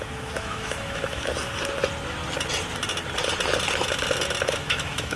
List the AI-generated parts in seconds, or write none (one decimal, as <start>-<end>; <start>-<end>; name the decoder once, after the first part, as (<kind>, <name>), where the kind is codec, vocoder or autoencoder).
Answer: 0.0-1.3 (autoencoder, DAC-VAE); 4.4-5.2